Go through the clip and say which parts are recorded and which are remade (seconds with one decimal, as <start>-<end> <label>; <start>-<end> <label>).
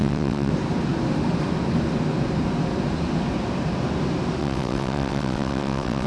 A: 0.0-0.5 remade; 0.5-4.4 recorded; 4.4-6.1 remade